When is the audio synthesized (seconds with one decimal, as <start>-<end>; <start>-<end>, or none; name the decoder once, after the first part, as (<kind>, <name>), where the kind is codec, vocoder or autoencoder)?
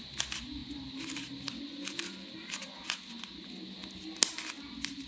none